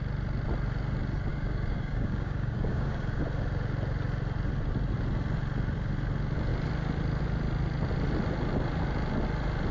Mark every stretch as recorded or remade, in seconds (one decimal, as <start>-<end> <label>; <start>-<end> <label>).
0.0-1.3 recorded; 1.3-3.2 remade; 3.2-9.7 recorded